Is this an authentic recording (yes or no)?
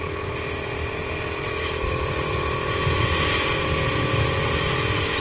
yes